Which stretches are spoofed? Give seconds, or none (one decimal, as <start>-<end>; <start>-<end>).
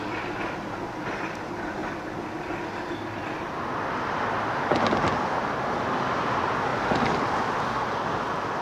none